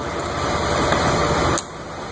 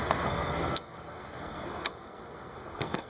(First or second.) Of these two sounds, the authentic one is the first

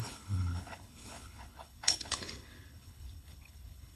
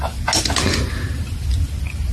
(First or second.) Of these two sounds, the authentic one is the second